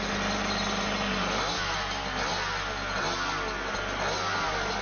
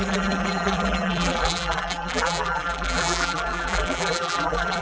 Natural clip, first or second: first